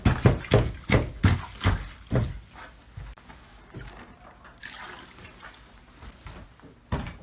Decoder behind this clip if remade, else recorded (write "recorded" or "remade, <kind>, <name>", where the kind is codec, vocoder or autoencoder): recorded